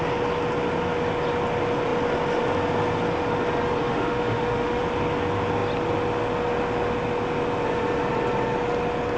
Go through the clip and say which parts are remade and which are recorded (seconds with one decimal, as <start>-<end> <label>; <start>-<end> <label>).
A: 0.0-3.8 recorded; 3.8-4.8 remade; 4.8-9.2 recorded